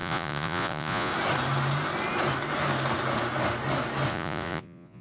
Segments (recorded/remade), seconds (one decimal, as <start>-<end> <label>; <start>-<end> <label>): 0.0-1.1 remade; 1.1-4.1 recorded; 4.1-5.0 remade